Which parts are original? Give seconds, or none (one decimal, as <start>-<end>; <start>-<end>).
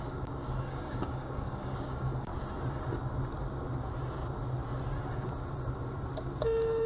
2.3-6.4